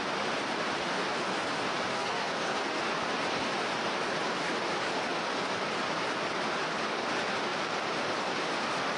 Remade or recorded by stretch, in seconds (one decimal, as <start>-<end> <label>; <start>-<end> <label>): 0.0-1.9 recorded; 1.9-2.8 remade; 2.8-9.0 recorded